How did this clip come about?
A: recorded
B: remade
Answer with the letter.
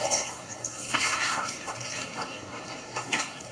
B